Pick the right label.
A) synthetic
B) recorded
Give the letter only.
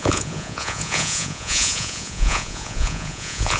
A